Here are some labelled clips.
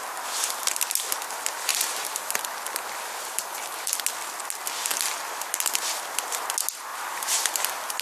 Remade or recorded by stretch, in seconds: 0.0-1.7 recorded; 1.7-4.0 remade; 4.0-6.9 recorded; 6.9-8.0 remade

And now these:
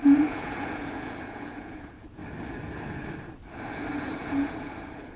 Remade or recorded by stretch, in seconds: 0.0-2.2 remade; 2.2-3.6 recorded; 3.6-5.2 remade